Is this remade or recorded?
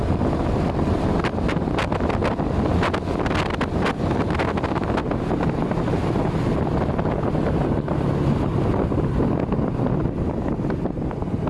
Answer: recorded